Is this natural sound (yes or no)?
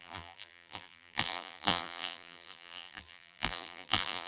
no